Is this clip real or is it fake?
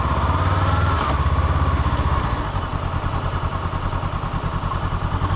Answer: real